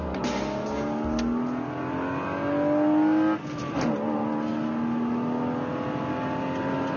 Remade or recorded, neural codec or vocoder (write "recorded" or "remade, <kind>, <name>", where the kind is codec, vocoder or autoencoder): recorded